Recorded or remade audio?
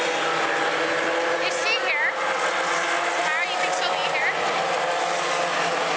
recorded